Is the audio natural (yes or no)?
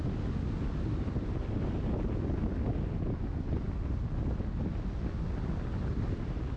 yes